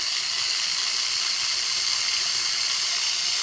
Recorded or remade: recorded